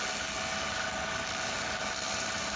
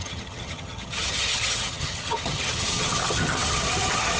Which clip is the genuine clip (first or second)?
first